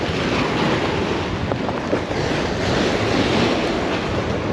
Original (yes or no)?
yes